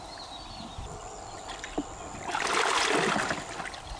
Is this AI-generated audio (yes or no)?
no